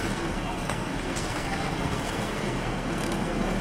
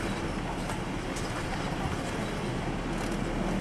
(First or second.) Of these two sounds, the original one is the second